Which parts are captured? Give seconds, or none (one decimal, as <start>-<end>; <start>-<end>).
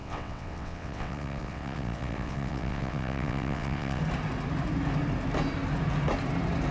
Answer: 4.0-6.7